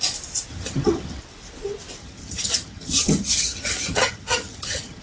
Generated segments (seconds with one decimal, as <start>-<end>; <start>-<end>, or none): 0.5-1.2; 2.0-5.0